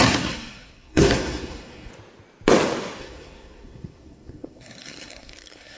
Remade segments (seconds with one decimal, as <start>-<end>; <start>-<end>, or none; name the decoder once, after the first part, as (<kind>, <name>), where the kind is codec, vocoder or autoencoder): 0.0-1.9 (codec, SNAC); 3.0-5.8